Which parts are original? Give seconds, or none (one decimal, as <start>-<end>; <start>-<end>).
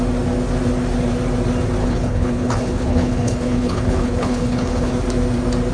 0.0-1.8; 4.9-5.7